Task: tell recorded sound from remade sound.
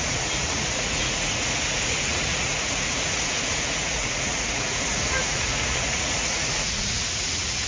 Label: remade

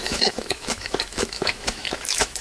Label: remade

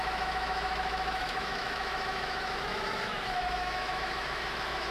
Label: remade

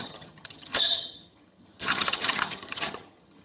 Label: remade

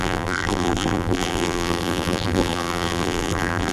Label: remade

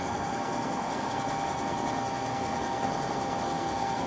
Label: remade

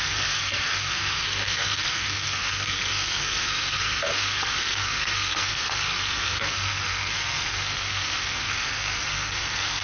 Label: remade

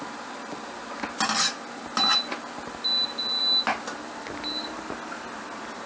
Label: recorded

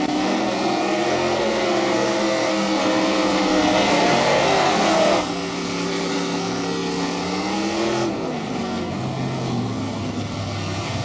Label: remade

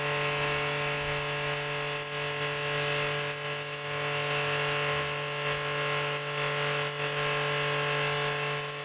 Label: recorded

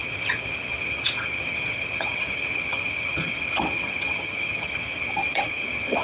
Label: remade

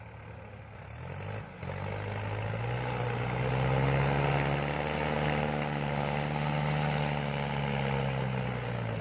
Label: recorded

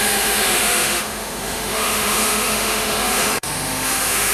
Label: remade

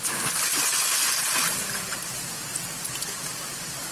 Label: recorded